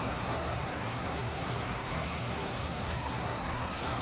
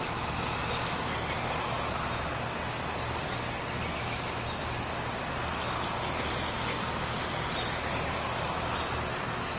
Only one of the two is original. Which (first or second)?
second